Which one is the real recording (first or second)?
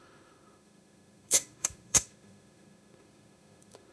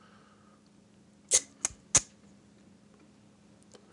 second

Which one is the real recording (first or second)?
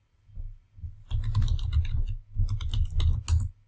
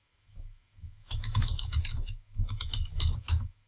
first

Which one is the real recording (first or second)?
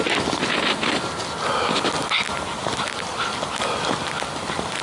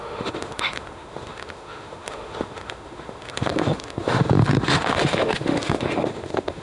first